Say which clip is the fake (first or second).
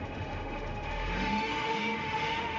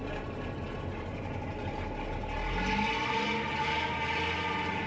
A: first